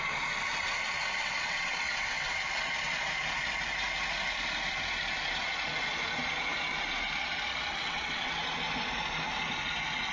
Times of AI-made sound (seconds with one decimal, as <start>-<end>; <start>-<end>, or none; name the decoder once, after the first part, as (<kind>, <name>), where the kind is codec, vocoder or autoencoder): 1.2-2.3 (vocoder, WaveNeXt); 7.8-8.4